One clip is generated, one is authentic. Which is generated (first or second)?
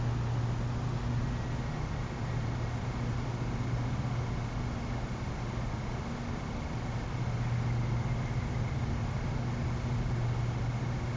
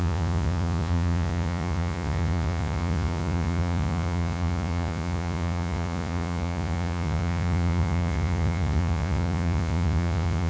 second